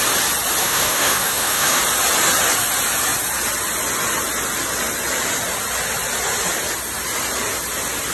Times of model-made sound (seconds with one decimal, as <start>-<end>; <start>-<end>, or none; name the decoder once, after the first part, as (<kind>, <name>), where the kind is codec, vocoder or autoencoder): 0.6-1.8 (autoencoder, DAC-VAE)